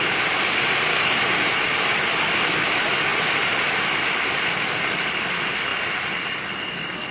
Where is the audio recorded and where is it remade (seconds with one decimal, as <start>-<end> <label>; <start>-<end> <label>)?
0.0-0.9 recorded; 0.9-1.5 remade; 1.5-7.1 recorded